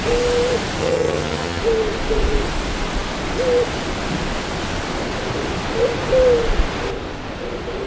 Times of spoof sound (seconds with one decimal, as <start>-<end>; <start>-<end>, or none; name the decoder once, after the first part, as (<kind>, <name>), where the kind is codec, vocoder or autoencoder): 0.8-1.6 (vocoder, HiFi-GAN)